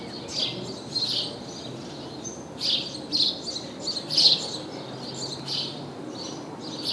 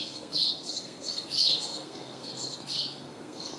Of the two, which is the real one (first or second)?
first